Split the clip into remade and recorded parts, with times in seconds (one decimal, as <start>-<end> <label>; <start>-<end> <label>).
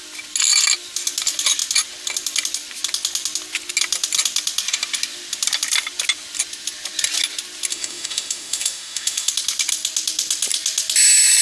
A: 0.0-7.7 recorded; 7.7-9.3 remade; 9.3-11.4 recorded